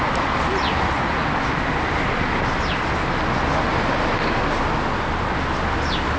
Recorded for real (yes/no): yes